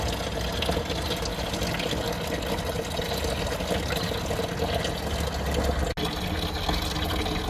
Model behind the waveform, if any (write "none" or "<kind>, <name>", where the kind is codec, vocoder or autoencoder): none